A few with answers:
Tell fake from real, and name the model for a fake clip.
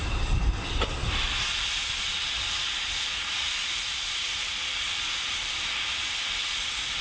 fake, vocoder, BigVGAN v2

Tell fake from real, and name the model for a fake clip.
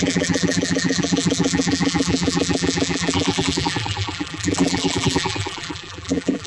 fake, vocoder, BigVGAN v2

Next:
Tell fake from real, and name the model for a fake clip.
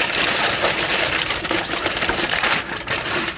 fake, vocoder, BigVGAN v2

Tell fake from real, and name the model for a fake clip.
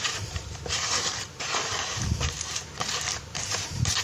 fake, vocoder, BigVGAN v2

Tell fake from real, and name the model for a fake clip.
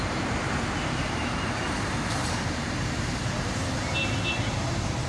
fake, vocoder, BigVGAN v2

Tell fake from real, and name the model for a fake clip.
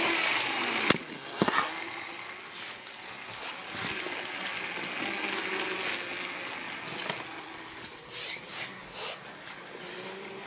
real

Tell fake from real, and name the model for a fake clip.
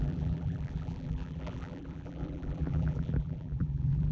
fake, vocoder, BigVGAN v2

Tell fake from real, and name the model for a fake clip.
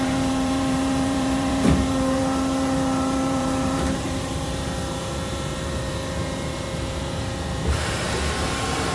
fake, vocoder, BigVGAN v2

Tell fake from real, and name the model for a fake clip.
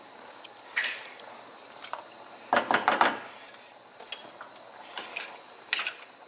real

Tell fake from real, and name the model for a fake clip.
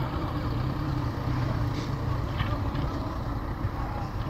fake, vocoder, BigVGAN v2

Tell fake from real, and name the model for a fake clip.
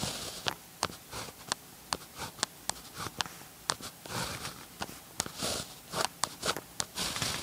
real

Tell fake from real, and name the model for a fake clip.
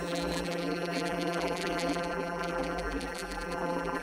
fake, vocoder, BigVGAN v2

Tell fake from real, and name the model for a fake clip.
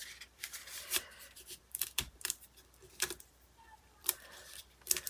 fake, vocoder, BigVGAN v2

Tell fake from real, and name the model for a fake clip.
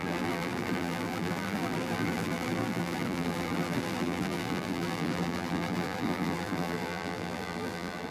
fake, vocoder, BigVGAN v2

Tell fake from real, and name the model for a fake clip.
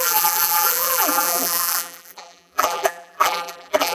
fake, vocoder, BigVGAN v2